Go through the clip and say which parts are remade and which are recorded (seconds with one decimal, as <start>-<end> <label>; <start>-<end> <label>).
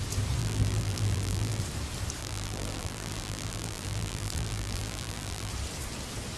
0.0-0.4 recorded; 0.4-1.6 remade; 1.6-2.2 recorded; 2.2-5.5 remade; 5.5-6.4 recorded